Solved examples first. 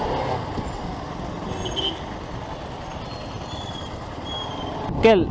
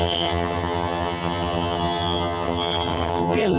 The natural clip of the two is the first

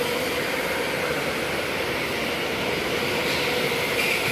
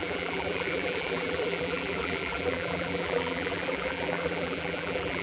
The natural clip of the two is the first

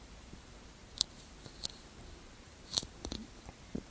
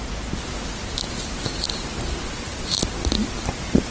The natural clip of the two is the second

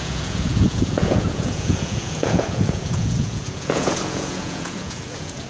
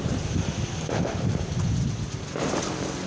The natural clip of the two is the second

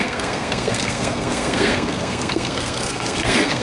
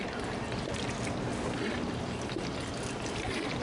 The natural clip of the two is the second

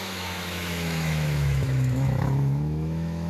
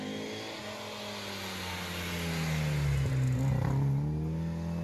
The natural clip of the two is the second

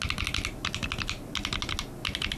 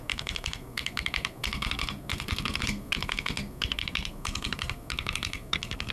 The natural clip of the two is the first